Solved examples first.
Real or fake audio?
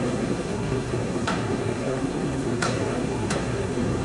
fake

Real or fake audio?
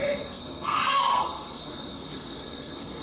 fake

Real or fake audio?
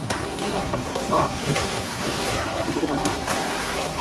fake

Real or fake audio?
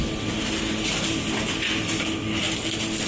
real